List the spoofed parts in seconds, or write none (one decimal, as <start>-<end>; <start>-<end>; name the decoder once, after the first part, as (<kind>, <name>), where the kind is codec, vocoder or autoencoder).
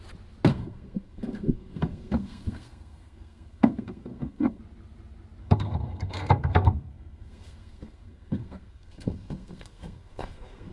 0.5-4.6 (codec, SNAC); 5.4-10.7